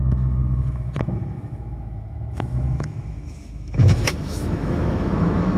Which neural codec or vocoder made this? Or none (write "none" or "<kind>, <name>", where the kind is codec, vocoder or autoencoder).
autoencoder, DAC-VAE